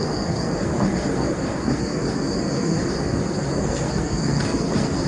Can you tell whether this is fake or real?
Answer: fake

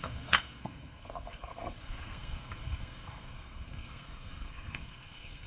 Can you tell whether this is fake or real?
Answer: fake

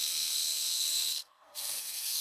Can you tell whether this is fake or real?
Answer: fake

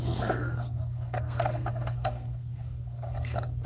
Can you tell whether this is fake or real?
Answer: fake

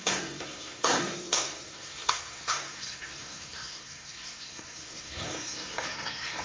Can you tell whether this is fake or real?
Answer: fake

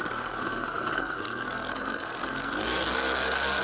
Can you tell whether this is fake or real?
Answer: fake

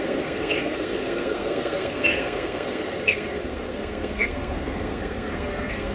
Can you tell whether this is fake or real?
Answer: fake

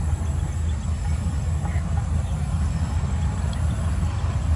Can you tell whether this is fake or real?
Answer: real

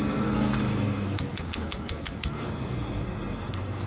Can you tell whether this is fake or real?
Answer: fake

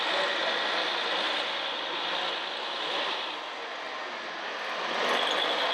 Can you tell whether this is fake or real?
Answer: real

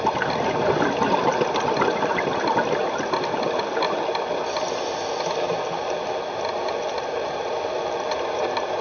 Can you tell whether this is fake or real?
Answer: real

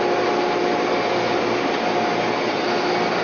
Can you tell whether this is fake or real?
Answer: real